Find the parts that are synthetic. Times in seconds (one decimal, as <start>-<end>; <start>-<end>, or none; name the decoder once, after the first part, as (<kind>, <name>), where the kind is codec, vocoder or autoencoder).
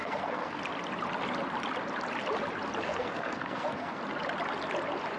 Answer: 0.0-0.6 (codec, SNAC); 2.9-4.0